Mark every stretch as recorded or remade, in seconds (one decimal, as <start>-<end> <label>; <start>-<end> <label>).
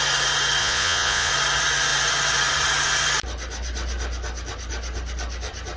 0.0-0.6 recorded; 0.6-1.3 remade; 1.3-5.8 recorded